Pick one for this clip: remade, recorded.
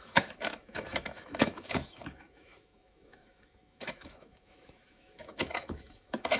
remade